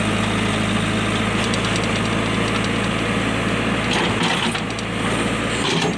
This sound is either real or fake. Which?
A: real